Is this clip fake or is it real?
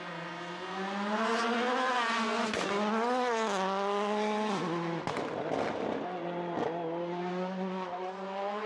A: real